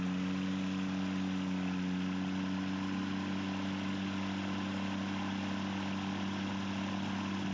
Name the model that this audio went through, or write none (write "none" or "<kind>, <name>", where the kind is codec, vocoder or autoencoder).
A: none